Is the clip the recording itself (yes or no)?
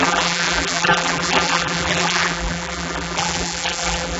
no